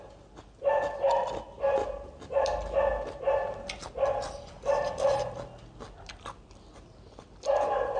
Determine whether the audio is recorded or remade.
recorded